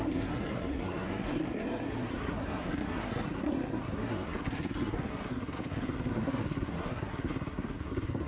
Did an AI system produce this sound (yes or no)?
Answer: yes